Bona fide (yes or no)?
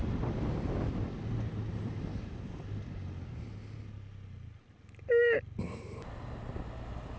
yes